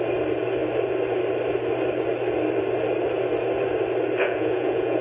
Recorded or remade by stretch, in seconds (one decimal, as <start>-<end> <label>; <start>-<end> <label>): 0.0-4.2 recorded; 4.2-5.0 remade